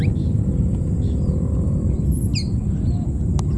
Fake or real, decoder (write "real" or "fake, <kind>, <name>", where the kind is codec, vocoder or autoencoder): real